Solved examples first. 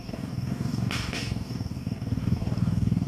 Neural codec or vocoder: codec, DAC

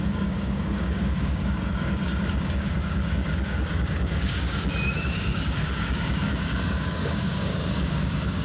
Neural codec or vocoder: codec, DAC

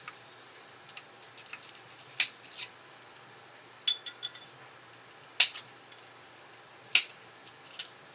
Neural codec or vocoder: none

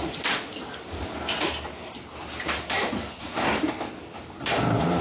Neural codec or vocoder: none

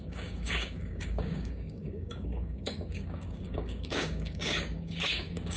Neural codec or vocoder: codec, DAC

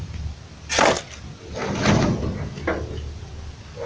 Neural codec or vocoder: none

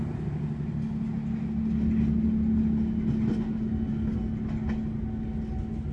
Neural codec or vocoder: none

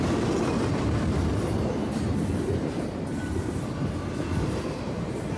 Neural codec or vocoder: none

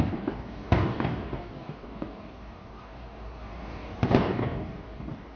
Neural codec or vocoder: codec, DAC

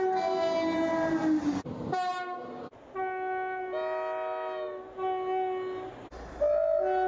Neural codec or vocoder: none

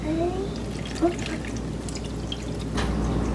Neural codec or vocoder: none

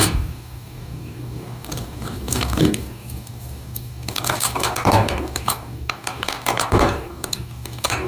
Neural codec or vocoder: codec, DAC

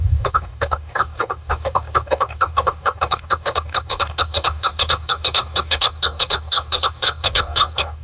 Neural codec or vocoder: codec, DAC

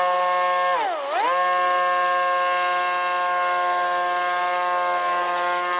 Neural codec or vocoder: none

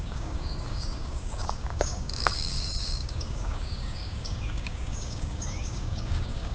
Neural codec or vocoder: codec, DAC